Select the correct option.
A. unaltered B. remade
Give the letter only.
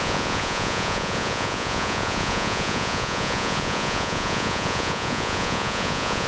B